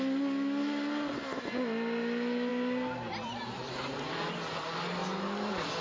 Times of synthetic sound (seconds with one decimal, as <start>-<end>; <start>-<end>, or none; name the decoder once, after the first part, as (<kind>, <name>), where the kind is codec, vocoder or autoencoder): none

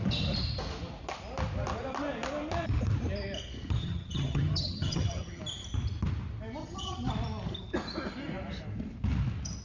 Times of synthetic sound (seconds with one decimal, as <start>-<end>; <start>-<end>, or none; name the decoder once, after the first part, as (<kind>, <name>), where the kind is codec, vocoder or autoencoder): 3.8-5.4 (vocoder, HiFi-GAN); 6.6-7.1

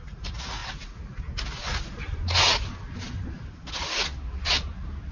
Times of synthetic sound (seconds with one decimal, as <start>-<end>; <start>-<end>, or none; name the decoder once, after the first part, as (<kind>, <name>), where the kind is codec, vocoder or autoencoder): none

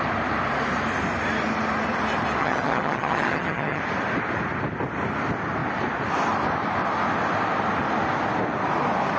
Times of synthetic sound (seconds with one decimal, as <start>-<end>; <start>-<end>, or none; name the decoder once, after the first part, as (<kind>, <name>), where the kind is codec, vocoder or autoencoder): 2.4-3.8 (vocoder, HiFi-GAN)

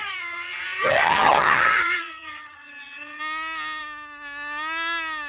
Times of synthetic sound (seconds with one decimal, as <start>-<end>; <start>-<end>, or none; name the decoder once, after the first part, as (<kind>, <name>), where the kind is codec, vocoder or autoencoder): 0.0-3.2 (vocoder, HiFi-GAN)

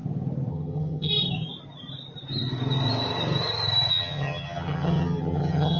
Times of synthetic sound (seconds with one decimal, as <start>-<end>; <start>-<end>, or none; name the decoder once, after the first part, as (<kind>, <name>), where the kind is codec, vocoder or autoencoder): 0.5-1.1 (vocoder, HiFi-GAN); 3.9-5.8